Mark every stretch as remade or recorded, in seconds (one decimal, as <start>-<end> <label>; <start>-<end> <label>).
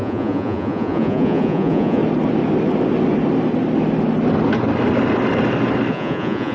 0.0-2.0 remade; 2.0-5.9 recorded; 5.9-6.5 remade